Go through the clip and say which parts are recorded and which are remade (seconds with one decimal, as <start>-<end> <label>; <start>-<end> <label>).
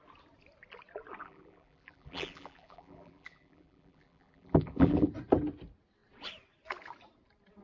0.0-1.2 recorded; 1.2-5.1 remade; 5.1-7.6 recorded